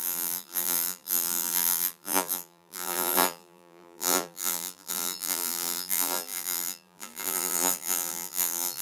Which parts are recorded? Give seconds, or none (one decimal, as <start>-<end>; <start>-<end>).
none